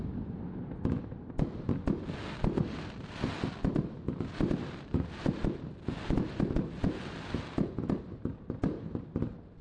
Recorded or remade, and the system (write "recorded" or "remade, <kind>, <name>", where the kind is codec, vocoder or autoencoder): recorded